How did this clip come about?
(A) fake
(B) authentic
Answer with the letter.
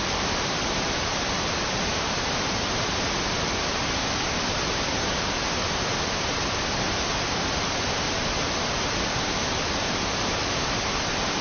B